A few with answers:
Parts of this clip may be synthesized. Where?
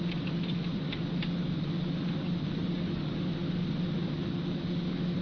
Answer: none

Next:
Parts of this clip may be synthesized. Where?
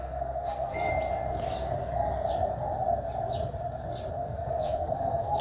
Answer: 0.0-0.9 (codec, SNAC); 4.1-5.4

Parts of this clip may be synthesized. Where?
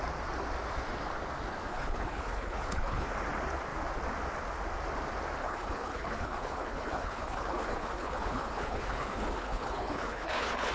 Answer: 1.7-3.1 (codec, HILCodec); 5.4-10.7